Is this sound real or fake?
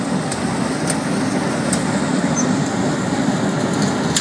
real